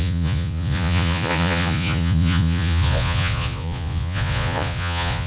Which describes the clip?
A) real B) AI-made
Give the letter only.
B